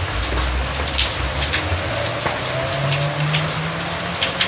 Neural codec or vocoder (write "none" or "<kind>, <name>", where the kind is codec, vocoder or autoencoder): none